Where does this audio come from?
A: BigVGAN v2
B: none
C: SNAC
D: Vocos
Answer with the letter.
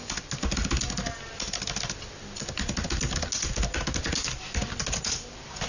B